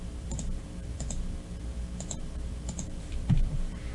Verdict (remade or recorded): remade